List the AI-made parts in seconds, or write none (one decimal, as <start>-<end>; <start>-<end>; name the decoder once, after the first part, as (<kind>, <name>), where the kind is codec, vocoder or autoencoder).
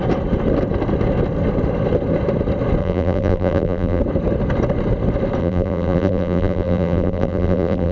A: 2.8-4.0 (vocoder, BigVGAN v2); 5.4-7.9